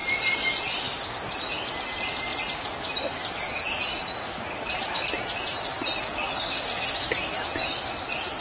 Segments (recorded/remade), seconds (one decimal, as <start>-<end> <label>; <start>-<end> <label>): 0.0-0.5 remade; 0.5-2.3 recorded; 2.3-6.6 remade; 6.6-7.2 recorded; 7.2-8.0 remade; 8.0-8.4 recorded